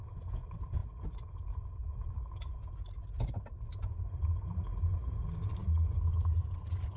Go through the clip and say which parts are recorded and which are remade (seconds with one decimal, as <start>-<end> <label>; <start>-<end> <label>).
0.0-7.0 recorded